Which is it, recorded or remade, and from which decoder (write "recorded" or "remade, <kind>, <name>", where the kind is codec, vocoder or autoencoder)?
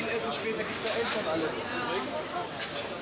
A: recorded